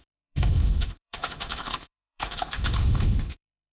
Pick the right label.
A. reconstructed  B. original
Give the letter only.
A